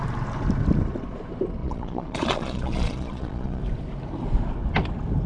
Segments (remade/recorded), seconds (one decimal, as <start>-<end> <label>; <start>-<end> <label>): 0.0-1.6 recorded; 1.6-3.6 remade; 3.6-5.3 recorded